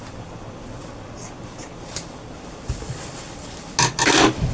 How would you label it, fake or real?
real